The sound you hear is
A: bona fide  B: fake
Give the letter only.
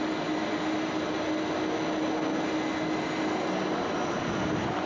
A